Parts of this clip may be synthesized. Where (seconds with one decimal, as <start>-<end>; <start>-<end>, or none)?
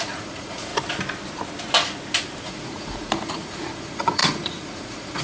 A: 0.0-0.7; 2.4-5.2